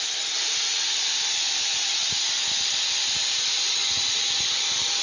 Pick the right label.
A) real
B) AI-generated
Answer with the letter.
A